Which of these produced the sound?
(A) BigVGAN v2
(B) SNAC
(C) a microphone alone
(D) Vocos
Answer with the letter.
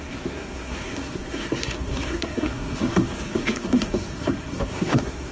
B